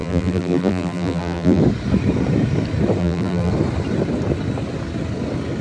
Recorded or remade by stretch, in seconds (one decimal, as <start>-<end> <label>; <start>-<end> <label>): 0.0-1.6 remade; 1.6-3.0 recorded; 3.0-3.5 remade; 3.5-5.6 recorded